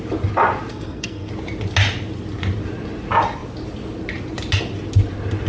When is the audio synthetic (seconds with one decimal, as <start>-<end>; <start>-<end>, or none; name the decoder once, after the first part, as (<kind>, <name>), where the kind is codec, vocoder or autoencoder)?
0.7-1.3 (codec, SNAC)